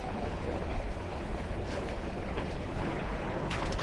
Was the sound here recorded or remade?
remade